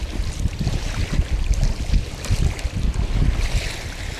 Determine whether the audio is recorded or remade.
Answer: recorded